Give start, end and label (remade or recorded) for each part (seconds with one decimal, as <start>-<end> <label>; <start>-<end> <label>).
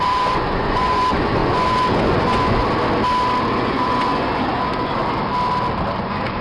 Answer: 0.0-2.6 remade; 2.6-3.6 recorded; 3.6-5.0 remade; 5.0-6.0 recorded; 6.0-6.4 remade